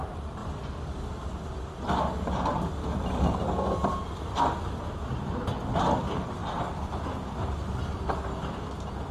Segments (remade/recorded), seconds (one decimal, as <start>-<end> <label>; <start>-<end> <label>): 0.0-9.1 recorded